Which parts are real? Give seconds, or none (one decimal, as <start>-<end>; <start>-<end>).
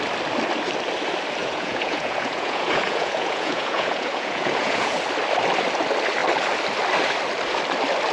0.0-1.4; 5.0-8.1